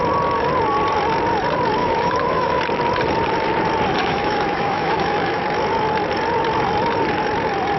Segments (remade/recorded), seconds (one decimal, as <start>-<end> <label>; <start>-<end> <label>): 0.0-1.8 recorded; 1.8-2.6 remade; 2.6-4.0 recorded; 4.0-5.4 remade; 5.4-7.8 recorded